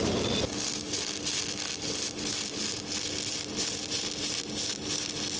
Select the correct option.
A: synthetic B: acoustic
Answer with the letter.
B